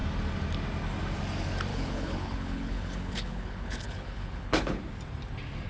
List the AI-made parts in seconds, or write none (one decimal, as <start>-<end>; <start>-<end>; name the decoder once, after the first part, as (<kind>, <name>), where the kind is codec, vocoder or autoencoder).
1.7-4.8 (codec, HILCodec)